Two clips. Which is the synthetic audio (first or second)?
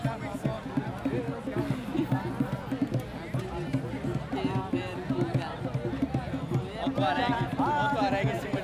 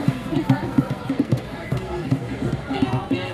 second